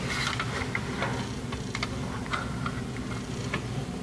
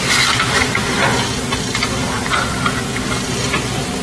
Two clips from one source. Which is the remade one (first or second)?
second